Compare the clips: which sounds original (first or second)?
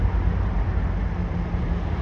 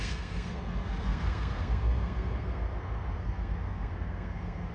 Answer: first